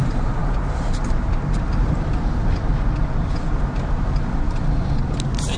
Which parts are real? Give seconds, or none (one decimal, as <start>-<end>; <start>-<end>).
2.1-5.6